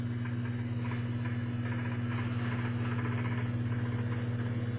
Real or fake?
real